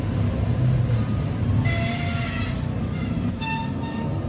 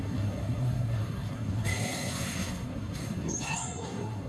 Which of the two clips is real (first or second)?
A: first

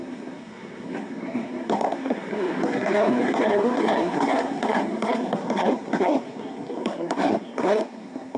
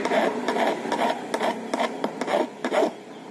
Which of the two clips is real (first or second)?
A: second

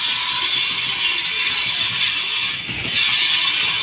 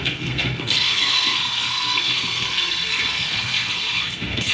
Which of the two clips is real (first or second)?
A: first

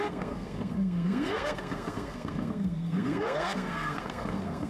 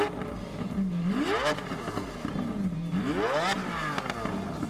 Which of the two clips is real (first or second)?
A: second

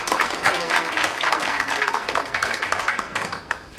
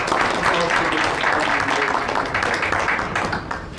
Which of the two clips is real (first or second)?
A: second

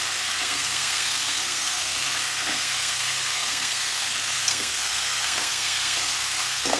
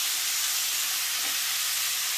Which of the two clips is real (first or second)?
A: second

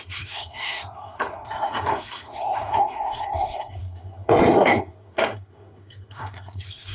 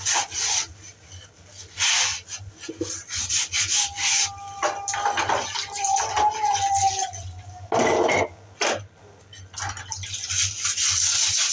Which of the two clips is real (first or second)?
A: second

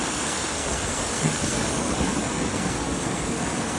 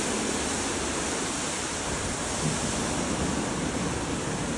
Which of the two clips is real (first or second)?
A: second